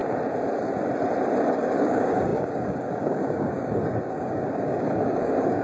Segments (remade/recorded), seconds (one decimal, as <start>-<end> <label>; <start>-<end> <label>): 0.0-1.5 recorded; 1.5-5.6 remade